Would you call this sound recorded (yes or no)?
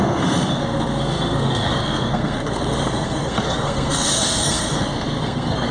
no